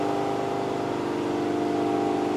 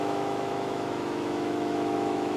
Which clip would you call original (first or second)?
first